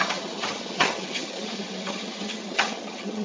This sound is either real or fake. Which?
fake